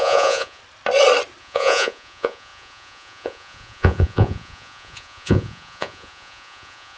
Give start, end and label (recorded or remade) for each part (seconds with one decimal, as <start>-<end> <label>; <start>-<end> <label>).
0.0-0.6 remade; 0.6-1.4 recorded; 1.4-7.0 remade